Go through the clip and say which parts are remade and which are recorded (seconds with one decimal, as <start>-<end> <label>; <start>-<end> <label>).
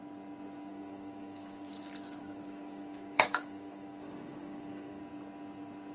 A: 0.0-0.7 recorded; 0.7-1.7 remade; 1.7-2.2 recorded; 2.2-5.0 remade; 5.0-5.9 recorded